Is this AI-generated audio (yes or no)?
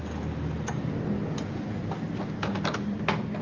no